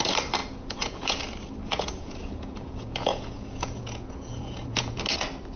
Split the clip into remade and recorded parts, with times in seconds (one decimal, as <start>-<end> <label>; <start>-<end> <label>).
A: 0.0-0.4 recorded; 0.4-1.2 remade; 1.2-1.6 recorded; 1.6-5.0 remade; 5.0-5.6 recorded